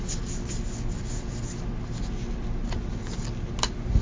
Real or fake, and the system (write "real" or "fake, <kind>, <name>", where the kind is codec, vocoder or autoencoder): real